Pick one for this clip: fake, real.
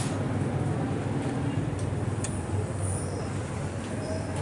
fake